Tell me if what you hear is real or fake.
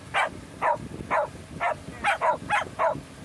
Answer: real